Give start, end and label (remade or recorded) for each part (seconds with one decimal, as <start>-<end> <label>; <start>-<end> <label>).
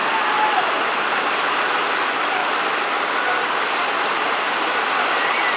0.0-5.6 recorded